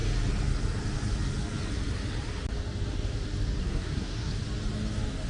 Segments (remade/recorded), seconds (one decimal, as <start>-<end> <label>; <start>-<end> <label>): 0.0-3.6 recorded; 3.6-4.4 remade; 4.4-5.3 recorded